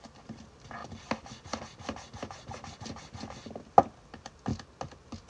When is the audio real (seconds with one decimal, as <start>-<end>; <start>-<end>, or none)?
0.0-5.3